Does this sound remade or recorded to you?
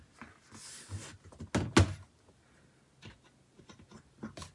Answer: recorded